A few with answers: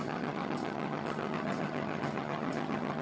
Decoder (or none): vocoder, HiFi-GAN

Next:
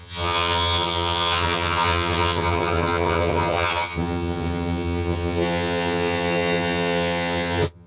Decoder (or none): vocoder, HiFi-GAN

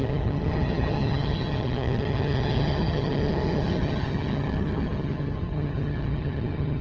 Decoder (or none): vocoder, HiFi-GAN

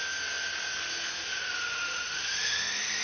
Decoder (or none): none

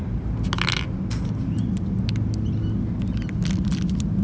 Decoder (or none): none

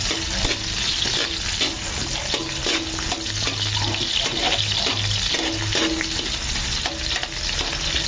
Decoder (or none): none